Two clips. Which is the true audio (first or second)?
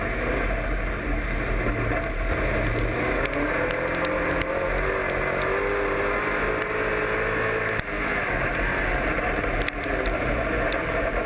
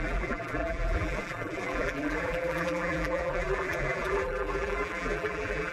first